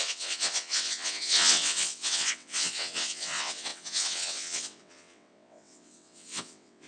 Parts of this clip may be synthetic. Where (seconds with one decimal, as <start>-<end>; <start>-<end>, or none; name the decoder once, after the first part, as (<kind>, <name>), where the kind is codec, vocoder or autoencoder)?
0.0-6.9 (vocoder, WaveNeXt)